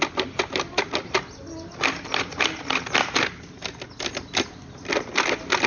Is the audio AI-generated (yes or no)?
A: no